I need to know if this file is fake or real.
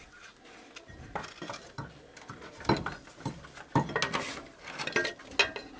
real